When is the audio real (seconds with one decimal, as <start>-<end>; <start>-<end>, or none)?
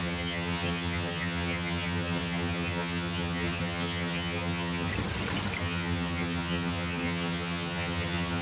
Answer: 4.9-5.6